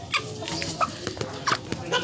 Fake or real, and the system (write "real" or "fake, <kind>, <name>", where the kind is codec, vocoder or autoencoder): real